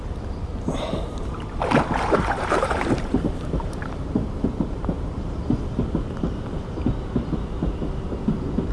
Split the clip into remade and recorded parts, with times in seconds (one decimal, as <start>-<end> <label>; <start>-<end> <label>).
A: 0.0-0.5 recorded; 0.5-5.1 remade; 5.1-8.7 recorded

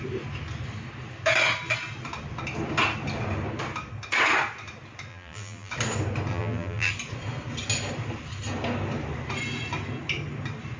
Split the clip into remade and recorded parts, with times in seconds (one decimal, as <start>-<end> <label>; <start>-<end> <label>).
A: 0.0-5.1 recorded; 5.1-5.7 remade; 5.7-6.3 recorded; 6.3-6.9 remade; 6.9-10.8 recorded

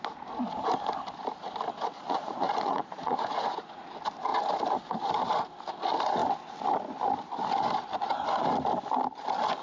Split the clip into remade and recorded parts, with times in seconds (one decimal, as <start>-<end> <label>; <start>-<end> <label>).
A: 0.0-1.9 recorded; 1.9-3.9 remade; 3.9-9.6 recorded

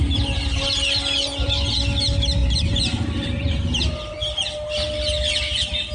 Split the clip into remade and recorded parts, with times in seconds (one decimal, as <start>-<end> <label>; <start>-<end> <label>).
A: 0.0-0.8 remade; 0.8-2.4 recorded; 2.4-3.6 remade; 3.6-5.9 recorded

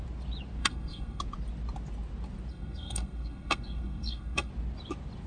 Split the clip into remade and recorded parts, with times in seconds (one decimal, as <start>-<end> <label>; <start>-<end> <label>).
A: 0.0-0.6 recorded; 0.6-1.2 remade; 1.2-2.5 recorded; 2.5-4.5 remade; 4.5-5.3 recorded

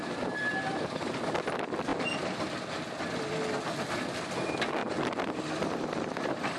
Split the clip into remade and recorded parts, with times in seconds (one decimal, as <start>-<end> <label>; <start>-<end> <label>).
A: 0.0-4.8 recorded; 4.8-6.6 remade

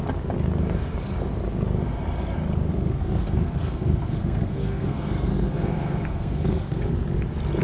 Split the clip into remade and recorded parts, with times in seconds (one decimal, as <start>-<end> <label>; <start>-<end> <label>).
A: 0.0-2.7 recorded; 2.7-6.9 remade; 6.9-7.6 recorded